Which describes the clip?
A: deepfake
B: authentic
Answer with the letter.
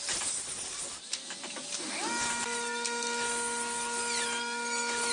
B